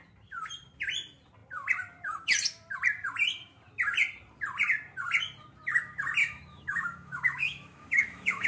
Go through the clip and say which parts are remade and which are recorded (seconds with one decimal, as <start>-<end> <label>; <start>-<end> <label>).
0.0-6.2 recorded; 6.2-8.5 remade